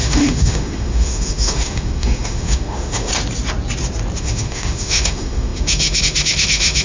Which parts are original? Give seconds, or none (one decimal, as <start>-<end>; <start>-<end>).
3.1-4.2